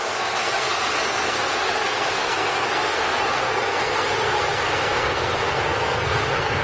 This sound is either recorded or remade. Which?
remade